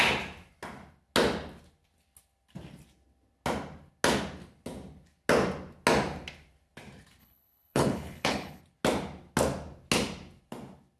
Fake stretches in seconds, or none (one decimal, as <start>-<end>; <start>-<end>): 7.2-8.6